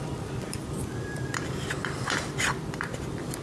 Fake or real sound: fake